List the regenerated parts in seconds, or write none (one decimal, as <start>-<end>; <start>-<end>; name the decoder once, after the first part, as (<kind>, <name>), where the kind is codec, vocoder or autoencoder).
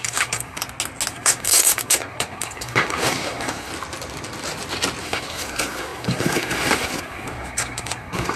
0.0-0.6 (codec, SNAC); 1.1-3.7; 5.0-8.4